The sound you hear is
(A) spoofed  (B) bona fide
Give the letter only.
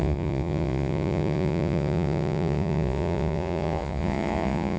A